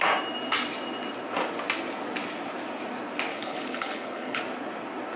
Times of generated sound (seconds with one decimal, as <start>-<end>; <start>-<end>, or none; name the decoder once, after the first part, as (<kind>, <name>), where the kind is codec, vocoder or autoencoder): 3.3-4.4 (codec, HILCodec)